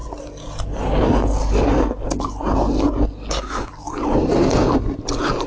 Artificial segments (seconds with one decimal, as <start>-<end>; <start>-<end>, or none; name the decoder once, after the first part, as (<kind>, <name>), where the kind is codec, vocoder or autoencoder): 3.3-3.7 (codec, SNAC)